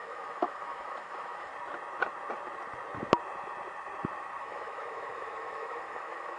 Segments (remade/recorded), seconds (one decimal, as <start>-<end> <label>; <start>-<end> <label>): 0.0-1.5 remade; 1.5-4.4 recorded; 4.4-6.4 remade

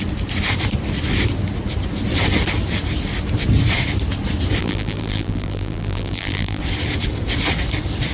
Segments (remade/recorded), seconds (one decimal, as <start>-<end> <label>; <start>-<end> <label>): 0.0-4.6 recorded; 4.6-6.6 remade; 6.6-8.1 recorded

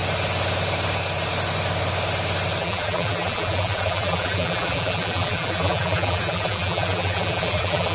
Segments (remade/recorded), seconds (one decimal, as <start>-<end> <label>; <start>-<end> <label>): 0.0-2.6 recorded; 2.6-7.9 remade

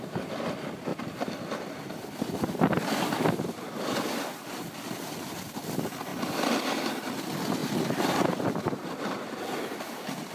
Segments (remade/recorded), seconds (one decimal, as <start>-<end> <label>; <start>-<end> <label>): 0.0-0.9 recorded; 0.9-5.5 remade; 5.5-6.1 recorded; 6.1-6.6 remade; 6.6-7.6 recorded; 7.6-9.4 remade; 9.4-10.3 recorded

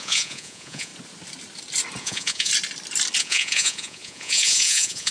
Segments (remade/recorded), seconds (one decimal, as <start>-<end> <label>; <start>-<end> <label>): 0.0-0.9 remade; 0.9-2.0 recorded; 2.0-2.5 remade; 2.5-3.2 recorded; 3.2-5.1 remade